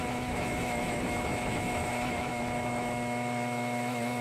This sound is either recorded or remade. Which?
remade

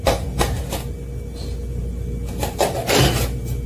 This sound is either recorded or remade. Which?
recorded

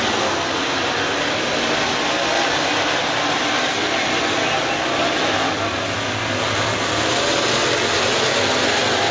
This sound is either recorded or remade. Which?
recorded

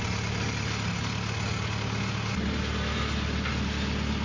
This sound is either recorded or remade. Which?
recorded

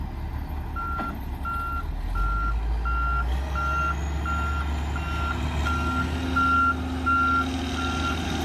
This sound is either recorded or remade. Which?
recorded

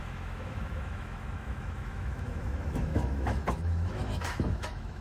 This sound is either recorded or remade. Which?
remade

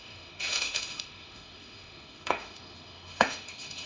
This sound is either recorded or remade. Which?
remade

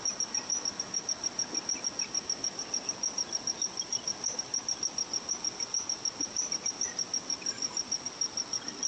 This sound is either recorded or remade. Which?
recorded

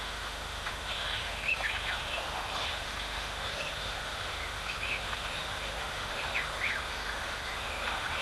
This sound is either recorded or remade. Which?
remade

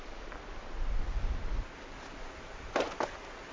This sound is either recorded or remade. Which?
recorded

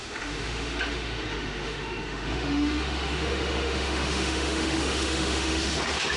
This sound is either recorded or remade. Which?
remade